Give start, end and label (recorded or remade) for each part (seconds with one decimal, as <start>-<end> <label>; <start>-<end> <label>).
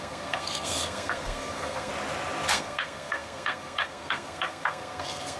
0.0-1.9 remade; 1.9-2.5 recorded; 2.5-5.4 remade